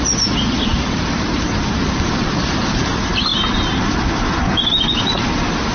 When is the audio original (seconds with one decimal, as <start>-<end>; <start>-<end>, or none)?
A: 0.0-0.7; 1.5-5.7